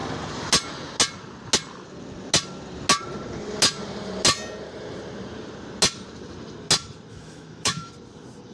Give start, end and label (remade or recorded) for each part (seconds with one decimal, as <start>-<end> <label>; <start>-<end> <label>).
0.0-7.1 recorded; 7.1-7.9 remade; 7.9-8.5 recorded